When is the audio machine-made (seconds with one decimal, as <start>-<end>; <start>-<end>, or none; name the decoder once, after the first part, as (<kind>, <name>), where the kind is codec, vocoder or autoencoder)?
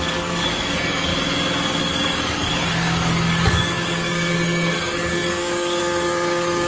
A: 0.0-1.1 (codec, DAC); 1.8-6.7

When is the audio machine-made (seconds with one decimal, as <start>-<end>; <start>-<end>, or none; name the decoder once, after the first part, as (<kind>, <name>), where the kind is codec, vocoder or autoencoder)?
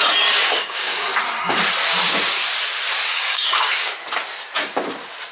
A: 0.4-1.1 (codec, DAC); 3.1-3.9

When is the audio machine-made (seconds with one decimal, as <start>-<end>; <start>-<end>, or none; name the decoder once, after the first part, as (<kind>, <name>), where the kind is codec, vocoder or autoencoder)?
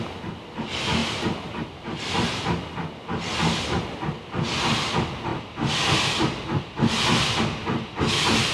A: 1.0-2.1 (vocoder, BigVGAN v2)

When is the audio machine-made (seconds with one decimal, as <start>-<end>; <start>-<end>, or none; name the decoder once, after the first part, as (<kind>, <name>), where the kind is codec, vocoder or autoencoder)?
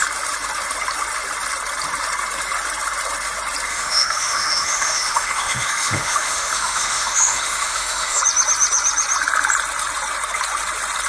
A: 3.7-8.2 (autoencoder, DAC-VAE)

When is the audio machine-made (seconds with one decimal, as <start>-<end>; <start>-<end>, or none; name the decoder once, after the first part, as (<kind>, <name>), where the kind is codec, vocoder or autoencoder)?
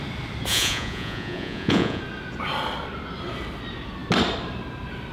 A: 0.5-2.0 (vocoder, Vocos)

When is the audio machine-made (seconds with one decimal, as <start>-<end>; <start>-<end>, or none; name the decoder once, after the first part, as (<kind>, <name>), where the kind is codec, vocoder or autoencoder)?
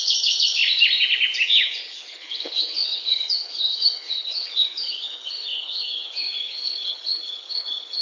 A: 0.0-0.6 (codec, HILCodec); 1.4-8.0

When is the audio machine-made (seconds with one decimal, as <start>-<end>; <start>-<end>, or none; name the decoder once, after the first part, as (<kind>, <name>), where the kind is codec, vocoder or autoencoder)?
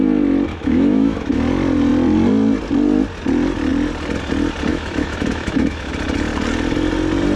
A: 0.5-1.4 (autoencoder, DAC-VAE); 4.7-5.9